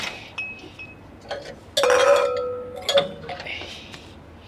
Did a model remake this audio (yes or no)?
no